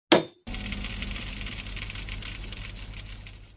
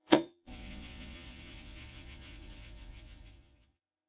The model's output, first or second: second